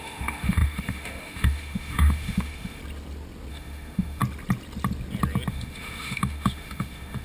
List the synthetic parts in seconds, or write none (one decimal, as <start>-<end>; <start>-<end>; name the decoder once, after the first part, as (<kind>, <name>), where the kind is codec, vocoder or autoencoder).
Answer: 0.0-2.8 (autoencoder, DAC-VAE); 3.5-4.2; 5.5-7.2